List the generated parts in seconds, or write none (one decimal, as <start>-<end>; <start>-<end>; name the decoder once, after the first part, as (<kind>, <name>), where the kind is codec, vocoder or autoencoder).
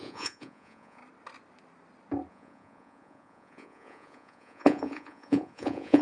0.0-1.0 (vocoder, Vocos); 2.3-6.0